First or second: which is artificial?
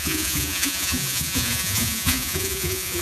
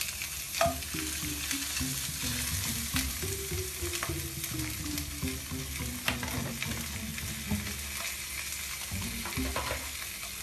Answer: first